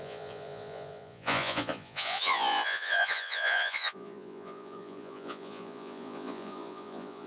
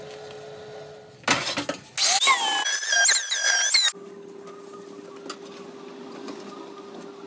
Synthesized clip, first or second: first